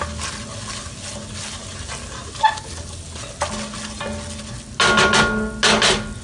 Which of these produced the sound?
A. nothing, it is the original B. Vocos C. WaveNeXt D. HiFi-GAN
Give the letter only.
A